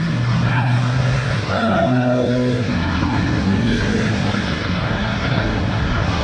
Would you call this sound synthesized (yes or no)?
yes